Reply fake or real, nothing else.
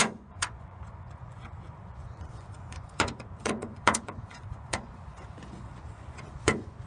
fake